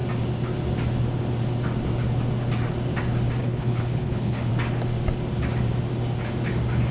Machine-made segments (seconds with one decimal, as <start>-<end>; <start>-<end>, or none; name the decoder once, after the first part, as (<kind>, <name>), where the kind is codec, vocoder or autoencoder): 3.4-4.5 (codec, HILCodec)